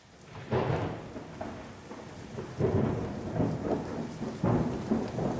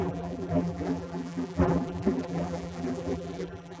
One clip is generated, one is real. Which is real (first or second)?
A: first